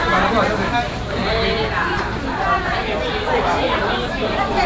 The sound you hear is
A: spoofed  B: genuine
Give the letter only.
B